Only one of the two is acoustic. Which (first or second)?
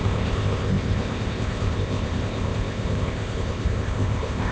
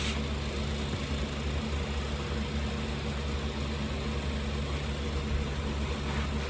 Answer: second